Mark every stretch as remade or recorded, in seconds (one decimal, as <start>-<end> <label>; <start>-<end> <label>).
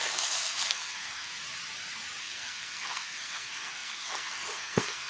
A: 0.0-1.3 remade; 1.3-2.2 recorded; 2.2-5.1 remade